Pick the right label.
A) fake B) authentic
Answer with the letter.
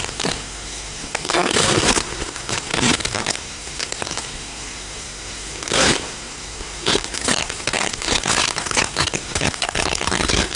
A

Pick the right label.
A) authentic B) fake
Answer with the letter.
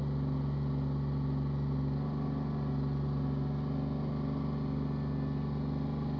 A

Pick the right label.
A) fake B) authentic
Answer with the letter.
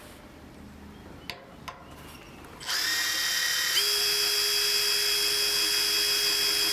B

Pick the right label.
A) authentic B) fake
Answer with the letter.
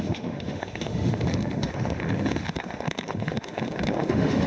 B